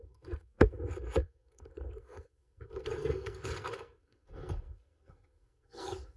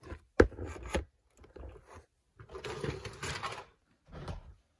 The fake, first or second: first